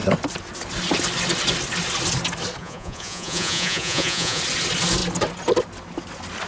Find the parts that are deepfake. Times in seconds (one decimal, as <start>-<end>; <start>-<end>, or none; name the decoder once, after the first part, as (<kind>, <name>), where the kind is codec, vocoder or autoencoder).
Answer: 2.6-4.4 (vocoder, Vocos)